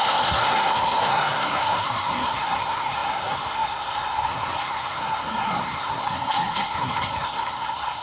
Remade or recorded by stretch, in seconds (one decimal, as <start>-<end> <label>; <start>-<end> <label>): 0.0-8.0 remade

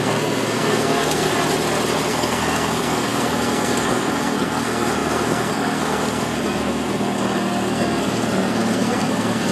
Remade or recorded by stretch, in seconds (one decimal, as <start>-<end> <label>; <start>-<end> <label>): 0.0-1.3 remade; 1.3-2.1 recorded; 2.1-9.5 remade

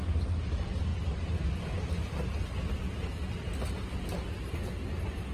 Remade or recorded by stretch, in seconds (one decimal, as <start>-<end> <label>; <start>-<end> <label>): 0.0-5.3 recorded

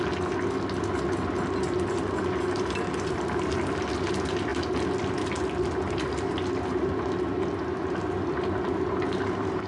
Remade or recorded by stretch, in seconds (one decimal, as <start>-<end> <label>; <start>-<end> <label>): 0.0-9.7 recorded

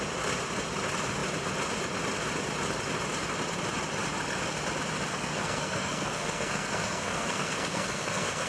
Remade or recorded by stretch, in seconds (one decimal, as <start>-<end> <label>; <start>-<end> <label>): 0.0-5.1 recorded; 5.1-8.5 remade